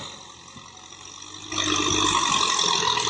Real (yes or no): yes